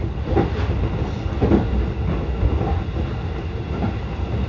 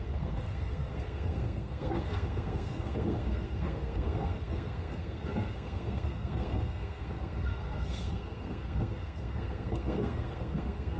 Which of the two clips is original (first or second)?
first